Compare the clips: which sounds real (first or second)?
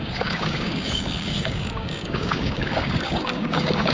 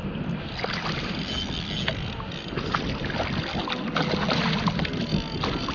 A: second